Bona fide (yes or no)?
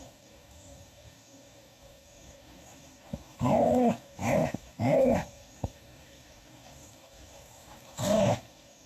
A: no